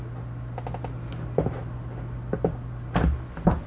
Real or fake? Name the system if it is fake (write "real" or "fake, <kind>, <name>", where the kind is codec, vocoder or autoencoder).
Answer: real